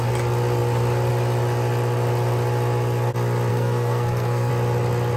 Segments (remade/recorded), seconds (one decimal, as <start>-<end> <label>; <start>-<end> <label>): 0.0-3.5 recorded; 3.5-4.5 remade; 4.5-5.2 recorded